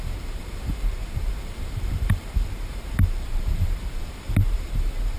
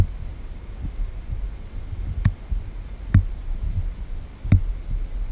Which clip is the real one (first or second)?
second